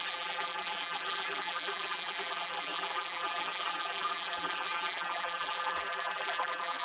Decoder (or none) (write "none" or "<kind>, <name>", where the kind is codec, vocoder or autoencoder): vocoder, BigVGAN v2